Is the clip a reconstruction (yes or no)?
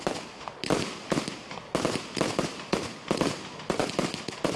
no